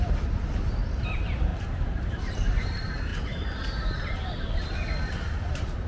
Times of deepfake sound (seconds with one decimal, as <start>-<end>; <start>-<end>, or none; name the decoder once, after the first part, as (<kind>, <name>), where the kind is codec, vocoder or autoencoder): 0.0-3.1 (vocoder, BigVGAN v2); 5.5-5.9